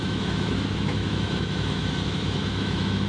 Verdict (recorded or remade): remade